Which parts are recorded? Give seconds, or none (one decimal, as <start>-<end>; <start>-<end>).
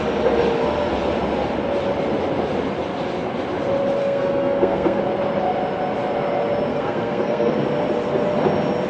0.0-4.0; 5.0-6.7; 7.5-8.9